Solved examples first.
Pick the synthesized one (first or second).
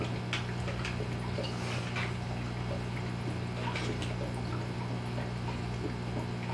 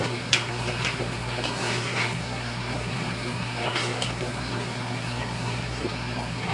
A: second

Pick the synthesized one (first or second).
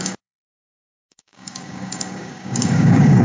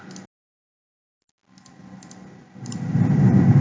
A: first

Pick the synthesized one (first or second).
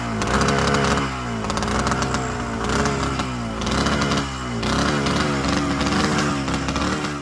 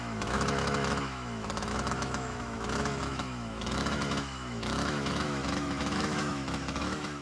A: second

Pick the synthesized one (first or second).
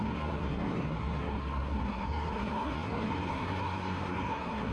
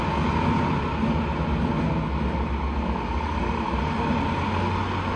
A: first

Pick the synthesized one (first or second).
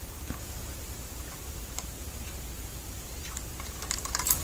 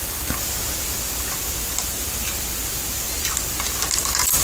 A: first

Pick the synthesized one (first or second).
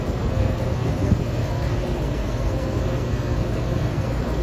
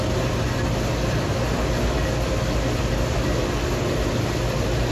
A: first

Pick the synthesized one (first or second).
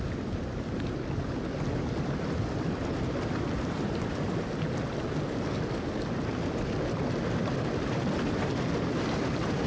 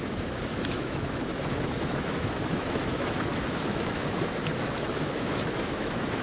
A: second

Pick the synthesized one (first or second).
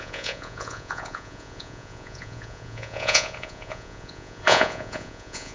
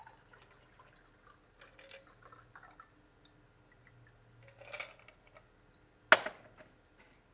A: first